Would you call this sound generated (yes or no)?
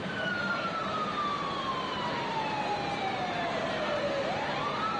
no